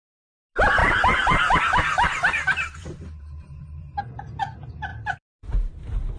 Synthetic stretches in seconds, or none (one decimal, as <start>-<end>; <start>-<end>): 0.8-4.0; 4.9-5.8